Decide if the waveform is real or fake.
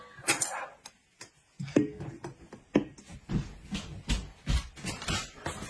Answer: real